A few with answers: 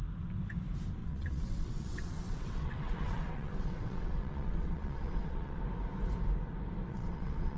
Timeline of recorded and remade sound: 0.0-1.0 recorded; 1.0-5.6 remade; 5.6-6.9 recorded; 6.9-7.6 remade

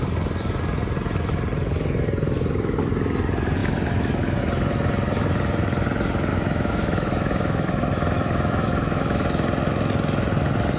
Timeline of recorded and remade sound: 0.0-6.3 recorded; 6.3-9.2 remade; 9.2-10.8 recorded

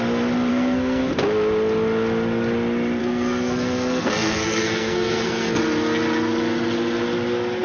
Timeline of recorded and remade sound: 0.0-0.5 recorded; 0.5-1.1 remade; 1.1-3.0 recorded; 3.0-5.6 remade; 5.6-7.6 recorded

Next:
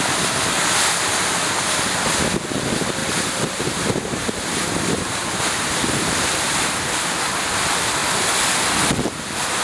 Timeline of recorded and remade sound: 0.0-3.0 recorded; 3.0-7.2 remade; 7.2-9.6 recorded

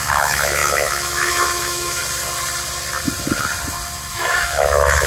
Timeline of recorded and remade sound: 0.0-2.0 remade; 2.0-4.1 recorded; 4.1-5.1 remade

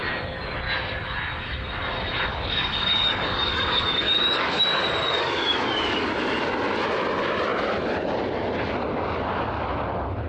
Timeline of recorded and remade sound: 0.0-2.3 recorded; 2.3-6.4 remade; 6.4-10.3 recorded